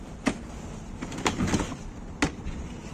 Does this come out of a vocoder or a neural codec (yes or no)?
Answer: no